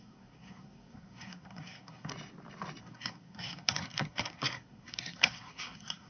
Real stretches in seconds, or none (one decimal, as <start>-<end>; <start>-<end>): 2.1-2.8